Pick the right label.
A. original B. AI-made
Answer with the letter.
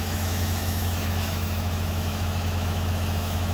B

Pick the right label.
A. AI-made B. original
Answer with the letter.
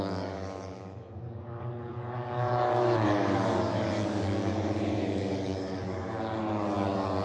A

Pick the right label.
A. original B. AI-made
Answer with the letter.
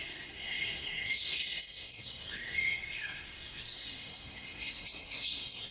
B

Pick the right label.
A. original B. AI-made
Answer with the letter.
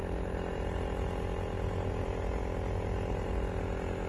A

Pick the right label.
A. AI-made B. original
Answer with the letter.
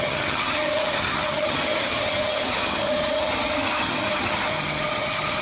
A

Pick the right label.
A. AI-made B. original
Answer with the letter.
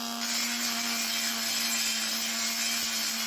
B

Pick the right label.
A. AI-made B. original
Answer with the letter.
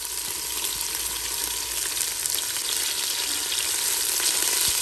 B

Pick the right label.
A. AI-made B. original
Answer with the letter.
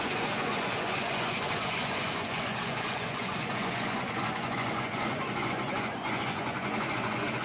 A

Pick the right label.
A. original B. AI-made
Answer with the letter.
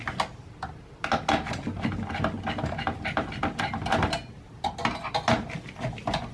A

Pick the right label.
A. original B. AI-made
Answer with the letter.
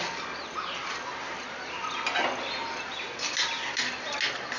A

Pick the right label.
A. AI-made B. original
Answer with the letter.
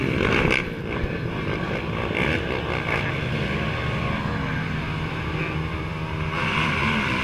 B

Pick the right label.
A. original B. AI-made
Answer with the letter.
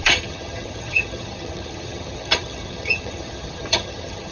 B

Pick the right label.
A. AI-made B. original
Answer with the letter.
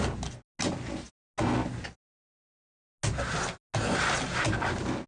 B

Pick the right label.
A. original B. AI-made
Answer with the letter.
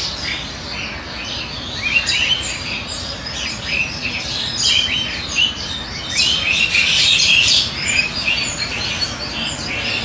B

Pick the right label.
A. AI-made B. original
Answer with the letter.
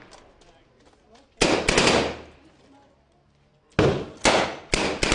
B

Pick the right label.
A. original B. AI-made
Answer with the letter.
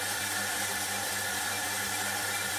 A